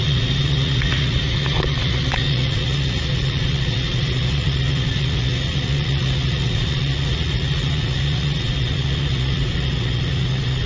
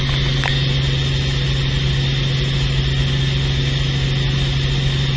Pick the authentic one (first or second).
second